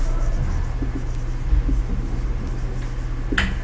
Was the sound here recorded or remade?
recorded